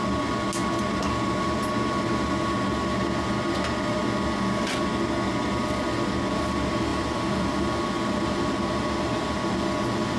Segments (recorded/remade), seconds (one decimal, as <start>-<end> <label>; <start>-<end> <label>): 0.0-6.9 recorded; 6.9-7.8 remade; 7.8-10.2 recorded